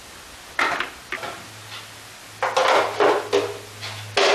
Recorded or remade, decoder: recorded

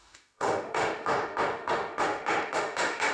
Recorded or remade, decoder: remade, autoencoder, DAC-VAE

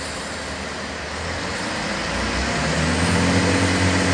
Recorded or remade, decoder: recorded